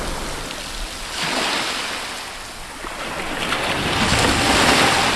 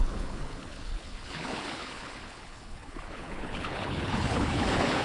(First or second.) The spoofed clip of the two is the second